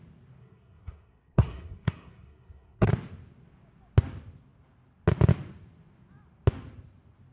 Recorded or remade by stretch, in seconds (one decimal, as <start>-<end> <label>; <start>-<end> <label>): 0.0-0.4 recorded; 0.4-2.9 remade; 2.9-7.3 recorded